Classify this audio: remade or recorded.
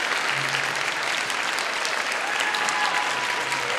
recorded